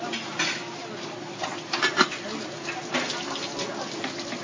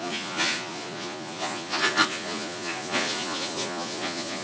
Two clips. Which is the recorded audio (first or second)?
first